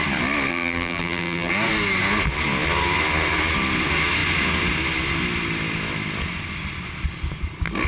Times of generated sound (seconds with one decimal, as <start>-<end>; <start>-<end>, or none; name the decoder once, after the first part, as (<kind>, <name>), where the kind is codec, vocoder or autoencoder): 0.5-1.5 (vocoder, BigVGAN v2)

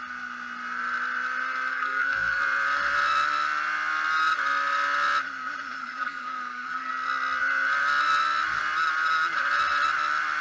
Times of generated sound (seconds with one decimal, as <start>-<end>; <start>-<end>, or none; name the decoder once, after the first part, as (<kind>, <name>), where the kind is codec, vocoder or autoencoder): 1.7-2.4 (codec, SNAC); 5.8-6.9